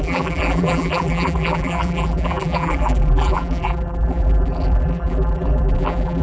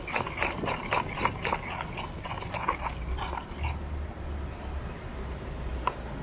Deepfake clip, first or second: first